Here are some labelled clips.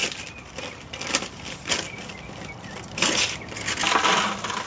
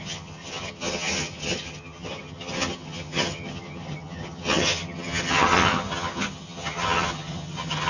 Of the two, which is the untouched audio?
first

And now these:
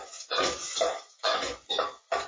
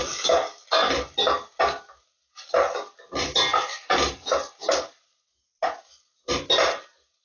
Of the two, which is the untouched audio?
second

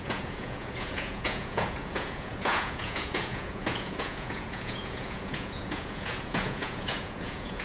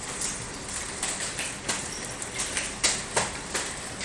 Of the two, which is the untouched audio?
second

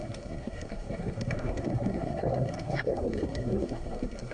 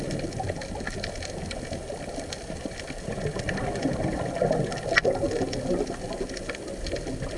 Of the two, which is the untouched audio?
second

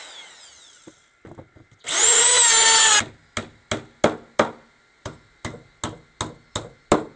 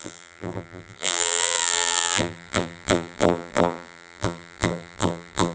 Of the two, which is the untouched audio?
first